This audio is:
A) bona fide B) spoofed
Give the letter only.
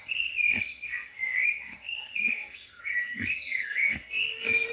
B